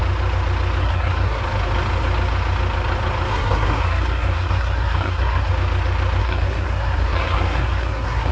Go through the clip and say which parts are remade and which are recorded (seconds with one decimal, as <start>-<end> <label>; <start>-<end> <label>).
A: 0.0-0.8 recorded; 0.8-1.4 remade; 1.4-3.3 recorded; 3.3-5.5 remade; 5.5-6.2 recorded; 6.2-8.3 remade